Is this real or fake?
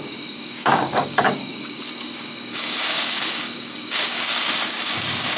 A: fake